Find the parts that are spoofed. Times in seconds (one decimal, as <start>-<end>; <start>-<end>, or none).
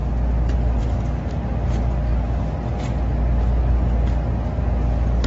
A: none